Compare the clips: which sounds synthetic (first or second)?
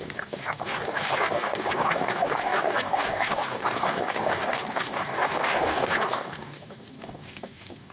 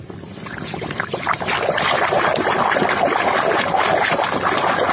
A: first